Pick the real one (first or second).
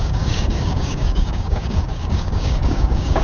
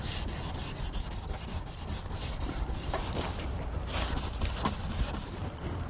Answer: second